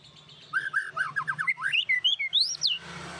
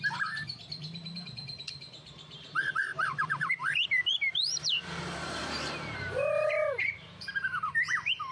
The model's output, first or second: second